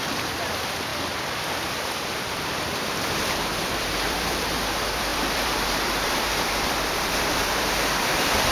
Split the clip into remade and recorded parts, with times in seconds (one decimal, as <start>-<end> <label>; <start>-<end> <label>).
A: 0.0-8.5 remade